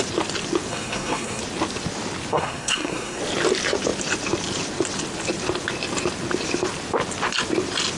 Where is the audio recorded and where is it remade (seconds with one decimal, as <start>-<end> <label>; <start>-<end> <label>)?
0.0-0.7 recorded; 0.7-1.4 remade; 1.4-2.3 recorded; 2.3-3.2 remade; 3.2-8.0 recorded